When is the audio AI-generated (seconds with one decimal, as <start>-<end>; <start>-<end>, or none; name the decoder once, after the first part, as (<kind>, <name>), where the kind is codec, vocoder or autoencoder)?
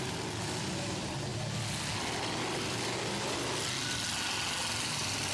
none